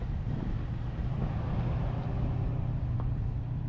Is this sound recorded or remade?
recorded